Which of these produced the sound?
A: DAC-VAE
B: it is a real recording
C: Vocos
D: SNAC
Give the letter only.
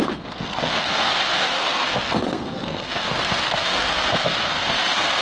D